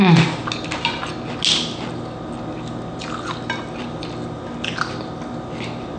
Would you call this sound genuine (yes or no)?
yes